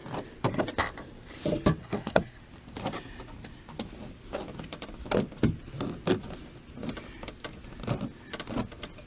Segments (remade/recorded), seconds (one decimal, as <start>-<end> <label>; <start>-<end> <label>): 0.0-1.8 recorded; 1.8-2.4 remade; 2.4-9.1 recorded